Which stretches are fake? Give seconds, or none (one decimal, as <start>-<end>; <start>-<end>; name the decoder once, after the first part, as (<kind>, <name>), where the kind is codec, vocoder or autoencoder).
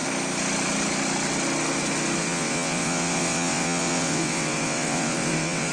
2.2-5.7 (vocoder, WaveNeXt)